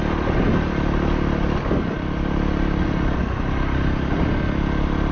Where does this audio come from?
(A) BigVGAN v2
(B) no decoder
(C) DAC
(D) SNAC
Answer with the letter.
B